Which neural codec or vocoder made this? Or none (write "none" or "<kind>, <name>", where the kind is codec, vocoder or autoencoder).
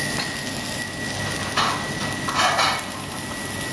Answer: none